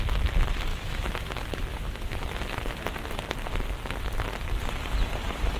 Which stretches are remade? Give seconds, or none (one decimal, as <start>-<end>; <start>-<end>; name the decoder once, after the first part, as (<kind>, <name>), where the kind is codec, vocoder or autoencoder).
0.7-2.8 (autoencoder, DAC-VAE)